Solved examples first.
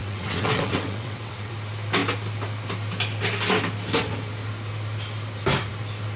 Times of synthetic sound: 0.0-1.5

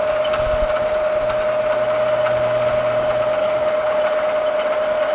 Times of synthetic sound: 3.4-4.0